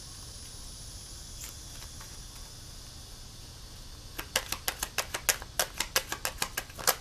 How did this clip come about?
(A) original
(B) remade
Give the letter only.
A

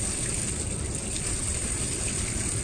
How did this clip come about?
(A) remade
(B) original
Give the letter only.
B